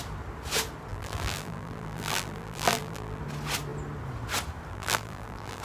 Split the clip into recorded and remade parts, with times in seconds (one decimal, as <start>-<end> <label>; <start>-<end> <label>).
0.0-0.9 recorded; 0.9-3.2 remade; 3.2-4.7 recorded; 4.7-5.6 remade